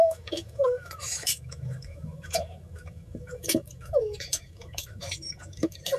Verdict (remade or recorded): remade